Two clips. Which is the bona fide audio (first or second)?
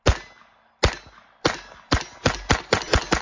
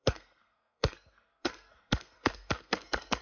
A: first